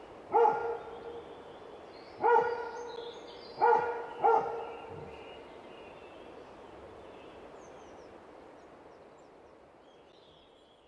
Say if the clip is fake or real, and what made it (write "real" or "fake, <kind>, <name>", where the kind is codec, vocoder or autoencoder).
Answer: real